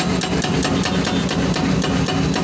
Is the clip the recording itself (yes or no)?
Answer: yes